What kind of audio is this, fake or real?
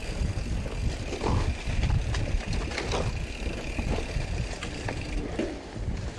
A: real